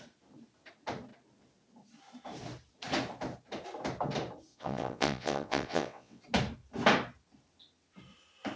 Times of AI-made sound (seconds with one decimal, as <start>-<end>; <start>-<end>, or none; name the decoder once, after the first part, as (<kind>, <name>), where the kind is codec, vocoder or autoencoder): 4.5-6.2 (vocoder, WaveNeXt)